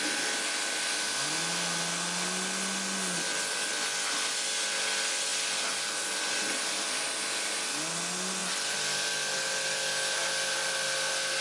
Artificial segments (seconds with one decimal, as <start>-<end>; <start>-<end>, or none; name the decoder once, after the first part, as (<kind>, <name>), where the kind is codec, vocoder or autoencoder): none